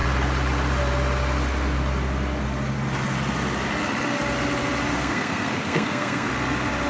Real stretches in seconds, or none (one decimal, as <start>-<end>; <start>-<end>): 0.0-4.9; 6.3-6.9